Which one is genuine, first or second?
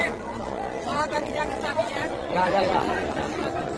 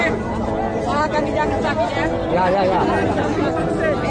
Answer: second